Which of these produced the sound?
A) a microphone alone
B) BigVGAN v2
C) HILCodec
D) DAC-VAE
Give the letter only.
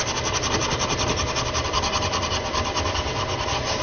A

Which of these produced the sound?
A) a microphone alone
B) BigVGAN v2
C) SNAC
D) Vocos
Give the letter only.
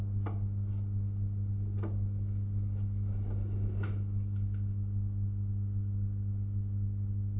A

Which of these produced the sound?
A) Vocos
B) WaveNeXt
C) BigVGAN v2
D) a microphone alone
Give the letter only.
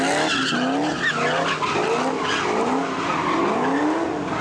D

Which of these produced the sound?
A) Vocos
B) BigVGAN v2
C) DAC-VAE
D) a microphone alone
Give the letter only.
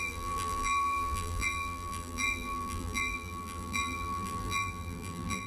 B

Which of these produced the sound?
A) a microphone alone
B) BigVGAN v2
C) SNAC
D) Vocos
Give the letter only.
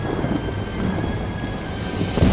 A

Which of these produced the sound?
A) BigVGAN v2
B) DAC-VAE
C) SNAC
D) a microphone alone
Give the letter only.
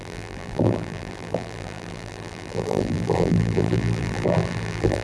A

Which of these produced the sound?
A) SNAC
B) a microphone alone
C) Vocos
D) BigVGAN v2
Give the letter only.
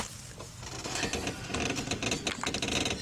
B